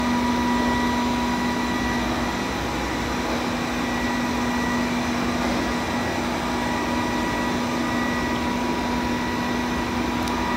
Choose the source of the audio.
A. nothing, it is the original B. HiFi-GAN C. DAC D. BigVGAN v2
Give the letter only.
A